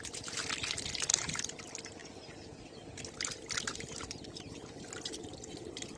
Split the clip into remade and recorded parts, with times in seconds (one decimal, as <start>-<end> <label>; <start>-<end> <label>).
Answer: 0.0-1.1 recorded; 1.1-1.6 remade; 1.6-3.7 recorded; 3.7-6.0 remade